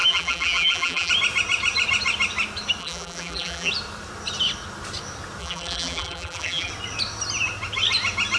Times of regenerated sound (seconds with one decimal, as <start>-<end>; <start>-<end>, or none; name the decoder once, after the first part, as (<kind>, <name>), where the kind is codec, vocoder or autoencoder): 0.0-1.1 (vocoder, BigVGAN v2); 2.8-3.7; 5.4-6.7